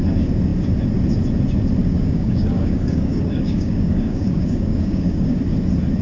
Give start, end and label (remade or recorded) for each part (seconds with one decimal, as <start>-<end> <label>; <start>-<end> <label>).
0.0-1.8 recorded; 1.8-5.4 remade; 5.4-6.0 recorded